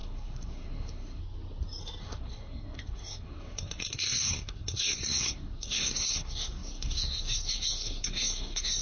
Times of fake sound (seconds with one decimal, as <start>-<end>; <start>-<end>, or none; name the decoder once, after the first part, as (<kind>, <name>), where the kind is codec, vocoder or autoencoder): 0.0-1.2 (codec, SNAC); 2.0-8.8